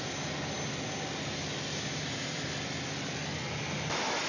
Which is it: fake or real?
real